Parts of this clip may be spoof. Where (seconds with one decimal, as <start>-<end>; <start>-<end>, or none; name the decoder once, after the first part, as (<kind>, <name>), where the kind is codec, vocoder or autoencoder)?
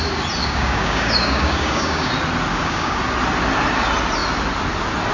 0.4-2.1 (codec, DAC); 2.5-3.0